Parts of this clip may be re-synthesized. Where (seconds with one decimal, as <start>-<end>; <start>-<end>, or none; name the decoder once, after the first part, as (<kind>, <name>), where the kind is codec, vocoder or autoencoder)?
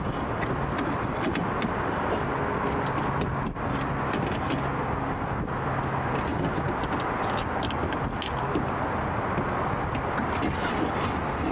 none